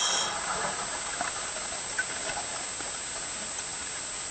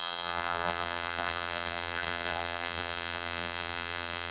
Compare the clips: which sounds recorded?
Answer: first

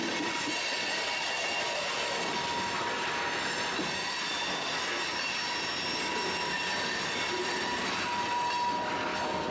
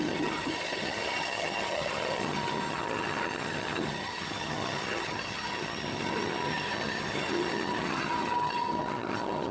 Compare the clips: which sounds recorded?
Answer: first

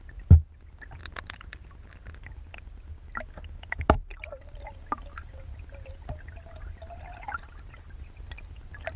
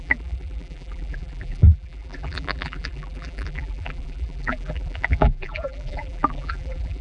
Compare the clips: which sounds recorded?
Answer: first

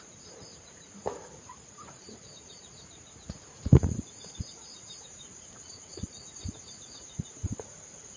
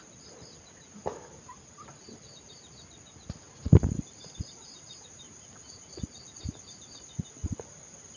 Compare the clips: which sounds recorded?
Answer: second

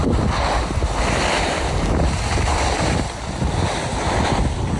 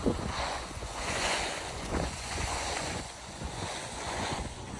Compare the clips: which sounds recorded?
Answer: first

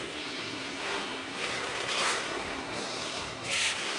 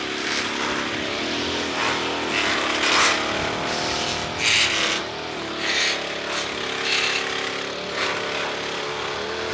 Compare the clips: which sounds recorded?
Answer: second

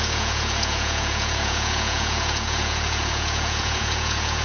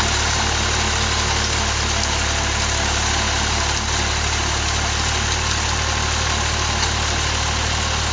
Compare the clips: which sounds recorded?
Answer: second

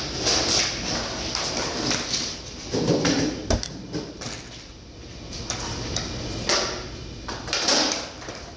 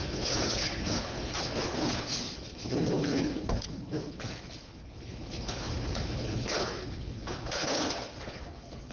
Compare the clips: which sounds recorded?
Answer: first